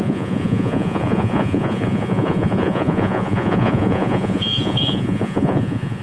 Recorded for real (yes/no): no